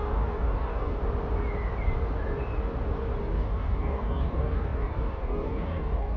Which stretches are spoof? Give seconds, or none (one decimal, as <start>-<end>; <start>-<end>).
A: 0.0-1.0; 3.2-6.2